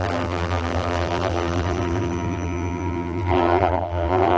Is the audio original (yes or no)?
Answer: no